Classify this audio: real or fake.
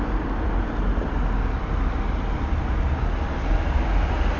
real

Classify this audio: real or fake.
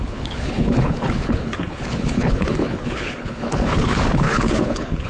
fake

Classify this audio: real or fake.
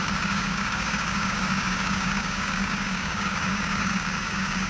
fake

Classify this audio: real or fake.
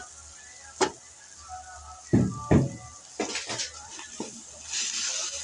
real